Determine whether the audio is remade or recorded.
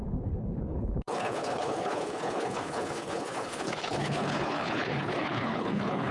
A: remade